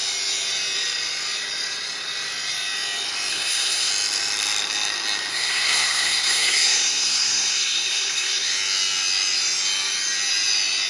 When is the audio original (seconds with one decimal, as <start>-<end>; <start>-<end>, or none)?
0.0-3.3; 3.9-5.3; 8.5-10.9

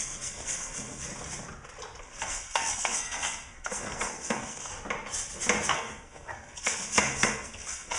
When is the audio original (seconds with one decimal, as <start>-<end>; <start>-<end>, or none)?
1.1-2.0; 4.7-5.7

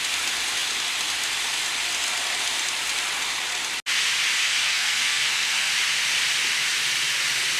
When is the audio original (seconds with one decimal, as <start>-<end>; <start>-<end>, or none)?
0.0-4.4; 5.7-7.6

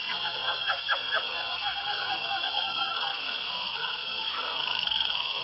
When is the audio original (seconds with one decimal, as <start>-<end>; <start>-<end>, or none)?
none